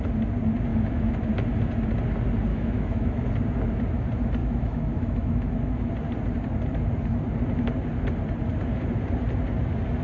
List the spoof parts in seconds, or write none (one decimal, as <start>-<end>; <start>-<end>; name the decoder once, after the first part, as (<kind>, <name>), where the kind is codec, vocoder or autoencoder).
0.7-1.3 (autoencoder, DAC-VAE); 2.5-3.3; 4.4-5.9